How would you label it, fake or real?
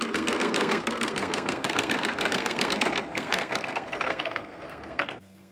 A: fake